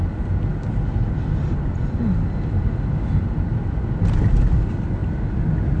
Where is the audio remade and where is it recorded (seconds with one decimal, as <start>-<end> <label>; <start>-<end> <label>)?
0.0-5.8 recorded